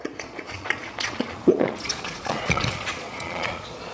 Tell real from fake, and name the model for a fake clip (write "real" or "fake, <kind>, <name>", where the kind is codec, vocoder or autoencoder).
fake, vocoder, Vocos